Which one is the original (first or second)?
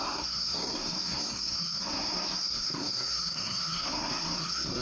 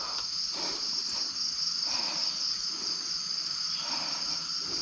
second